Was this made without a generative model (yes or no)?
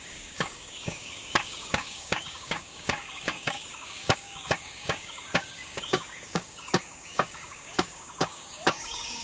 no